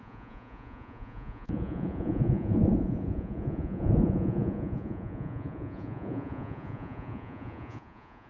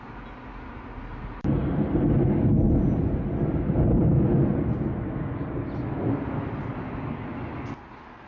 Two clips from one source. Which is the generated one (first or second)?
first